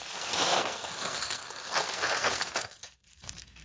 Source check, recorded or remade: remade